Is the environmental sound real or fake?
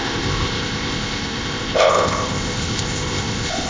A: fake